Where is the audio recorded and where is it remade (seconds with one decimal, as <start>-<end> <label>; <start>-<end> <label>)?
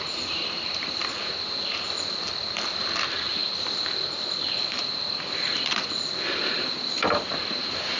0.0-3.4 recorded; 3.4-7.6 remade; 7.6-8.0 recorded